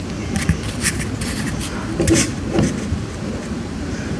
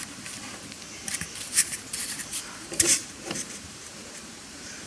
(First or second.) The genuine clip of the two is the first